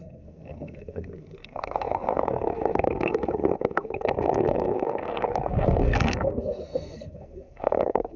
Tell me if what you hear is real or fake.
fake